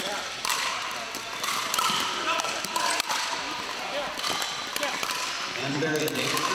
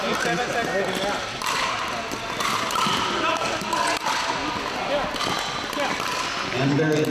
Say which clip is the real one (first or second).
second